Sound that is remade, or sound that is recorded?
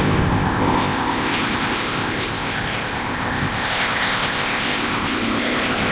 remade